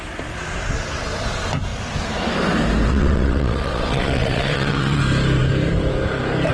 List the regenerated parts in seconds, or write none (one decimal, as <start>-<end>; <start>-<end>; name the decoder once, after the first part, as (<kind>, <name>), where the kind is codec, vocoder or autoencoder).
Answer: 2.9-5.0 (vocoder, WaveNeXt)